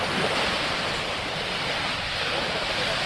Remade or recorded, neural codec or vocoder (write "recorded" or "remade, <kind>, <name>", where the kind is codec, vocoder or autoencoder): recorded